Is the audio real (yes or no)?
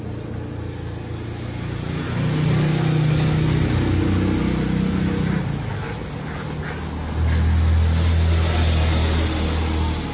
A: yes